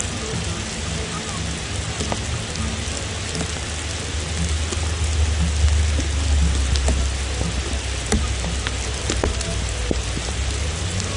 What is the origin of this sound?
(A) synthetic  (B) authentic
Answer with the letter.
B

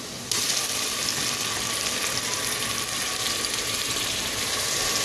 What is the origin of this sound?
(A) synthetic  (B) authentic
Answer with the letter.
B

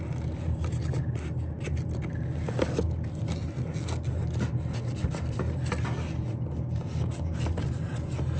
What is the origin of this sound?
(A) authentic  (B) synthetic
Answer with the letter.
A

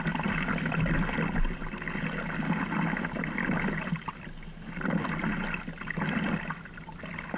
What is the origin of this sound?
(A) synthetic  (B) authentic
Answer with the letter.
B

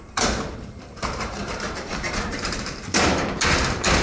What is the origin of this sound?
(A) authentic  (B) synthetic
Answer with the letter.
B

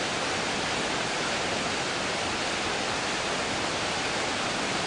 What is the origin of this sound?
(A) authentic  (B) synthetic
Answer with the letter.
A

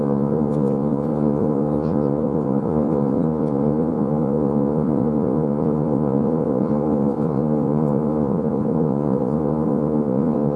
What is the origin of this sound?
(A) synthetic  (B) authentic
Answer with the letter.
A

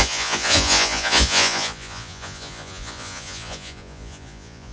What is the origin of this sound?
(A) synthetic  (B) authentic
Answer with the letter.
A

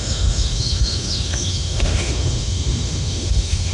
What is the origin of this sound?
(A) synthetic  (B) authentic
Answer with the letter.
A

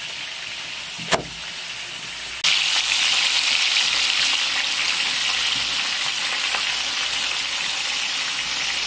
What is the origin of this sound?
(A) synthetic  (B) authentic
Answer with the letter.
B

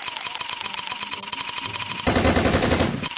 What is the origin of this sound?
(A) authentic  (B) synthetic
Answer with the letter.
B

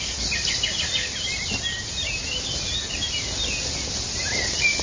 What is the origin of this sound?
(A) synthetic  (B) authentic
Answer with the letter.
B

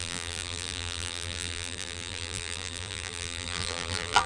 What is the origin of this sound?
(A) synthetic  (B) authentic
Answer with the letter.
A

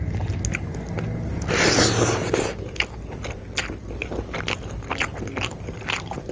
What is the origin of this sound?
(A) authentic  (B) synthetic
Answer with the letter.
A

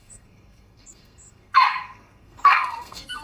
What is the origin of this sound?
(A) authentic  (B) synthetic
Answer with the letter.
B